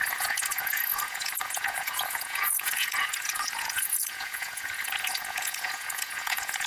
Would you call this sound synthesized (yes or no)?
yes